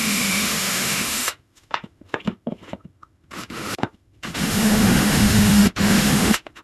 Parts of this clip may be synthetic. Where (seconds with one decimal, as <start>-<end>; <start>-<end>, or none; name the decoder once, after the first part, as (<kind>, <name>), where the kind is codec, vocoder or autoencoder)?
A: 0.0-6.6 (autoencoder, DAC-VAE)